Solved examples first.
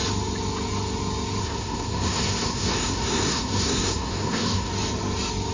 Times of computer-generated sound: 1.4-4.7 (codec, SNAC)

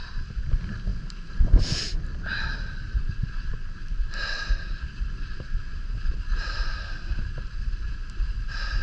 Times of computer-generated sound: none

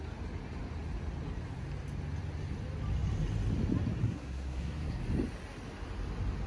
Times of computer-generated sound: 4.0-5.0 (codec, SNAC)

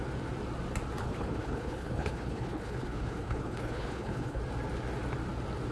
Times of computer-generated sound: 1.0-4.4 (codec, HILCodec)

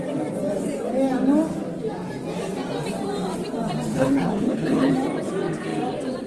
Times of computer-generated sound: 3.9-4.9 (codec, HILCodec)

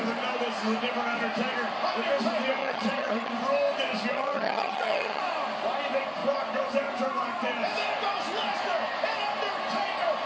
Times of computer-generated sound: 2.6-3.3 (vocoder, HiFi-GAN); 4.1-5.2